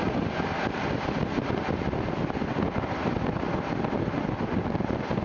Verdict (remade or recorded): recorded